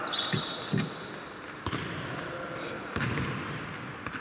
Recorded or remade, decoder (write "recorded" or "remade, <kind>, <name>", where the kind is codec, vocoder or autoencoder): recorded